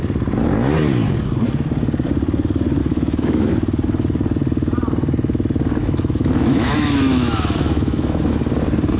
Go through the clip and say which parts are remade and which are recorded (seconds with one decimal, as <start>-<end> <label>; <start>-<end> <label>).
0.0-2.8 recorded; 2.8-3.5 remade; 3.5-5.8 recorded; 5.8-8.2 remade; 8.2-9.0 recorded

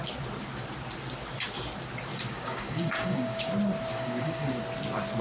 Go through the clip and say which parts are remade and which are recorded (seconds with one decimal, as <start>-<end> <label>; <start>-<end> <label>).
0.0-2.1 recorded; 2.1-3.5 remade; 3.5-3.9 recorded; 3.9-4.6 remade; 4.6-5.2 recorded

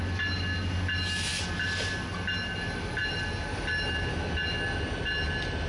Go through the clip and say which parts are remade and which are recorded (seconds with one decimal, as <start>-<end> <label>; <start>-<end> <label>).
0.0-5.7 recorded